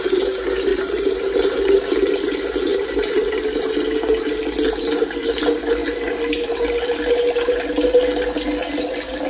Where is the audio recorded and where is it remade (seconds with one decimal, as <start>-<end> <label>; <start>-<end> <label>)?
0.0-0.7 recorded; 0.7-1.9 remade; 1.9-2.7 recorded; 2.7-3.4 remade; 3.4-9.3 recorded